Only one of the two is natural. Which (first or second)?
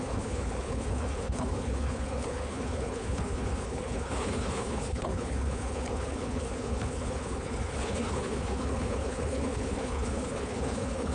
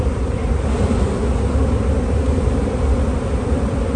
second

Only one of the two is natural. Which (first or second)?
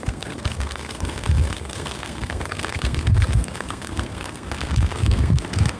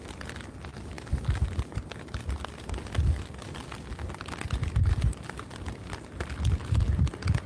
second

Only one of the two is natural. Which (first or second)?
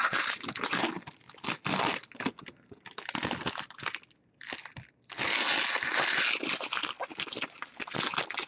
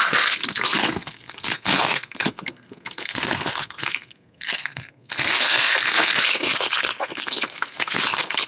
first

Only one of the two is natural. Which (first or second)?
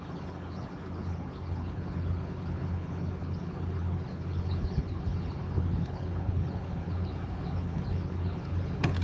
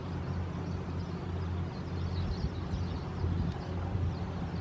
second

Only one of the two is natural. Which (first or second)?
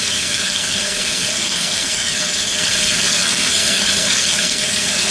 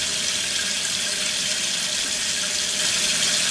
second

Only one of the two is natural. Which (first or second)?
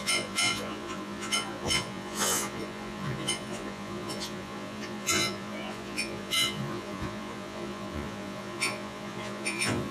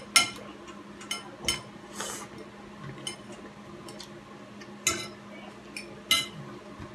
second